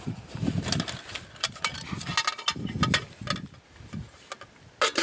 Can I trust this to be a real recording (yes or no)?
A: yes